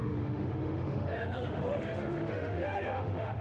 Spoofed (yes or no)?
yes